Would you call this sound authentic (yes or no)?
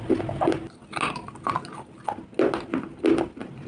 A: yes